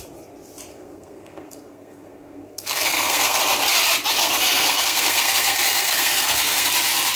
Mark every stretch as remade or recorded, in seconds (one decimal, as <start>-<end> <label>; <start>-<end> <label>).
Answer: 0.0-0.7 recorded; 0.7-3.4 remade; 3.4-4.2 recorded; 4.2-6.7 remade; 6.7-7.2 recorded